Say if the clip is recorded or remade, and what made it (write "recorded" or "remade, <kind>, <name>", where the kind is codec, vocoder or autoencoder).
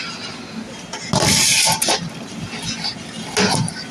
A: recorded